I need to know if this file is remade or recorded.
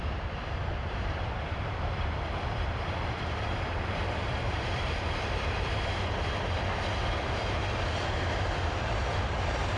remade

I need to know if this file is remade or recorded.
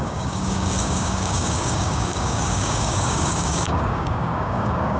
remade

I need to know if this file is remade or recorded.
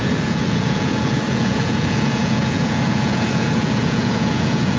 remade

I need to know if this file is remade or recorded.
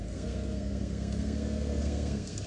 remade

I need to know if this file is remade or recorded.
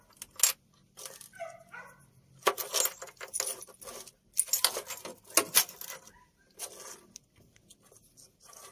recorded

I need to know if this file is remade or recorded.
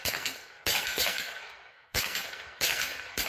remade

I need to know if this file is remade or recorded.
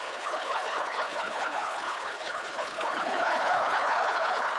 remade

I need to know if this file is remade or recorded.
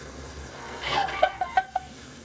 remade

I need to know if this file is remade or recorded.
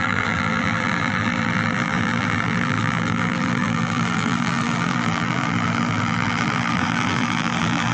remade